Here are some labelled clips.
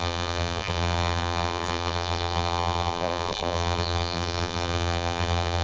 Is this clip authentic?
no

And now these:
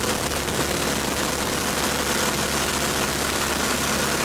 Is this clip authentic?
yes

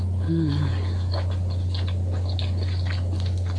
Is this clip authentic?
yes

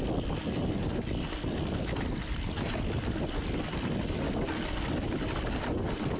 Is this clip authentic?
yes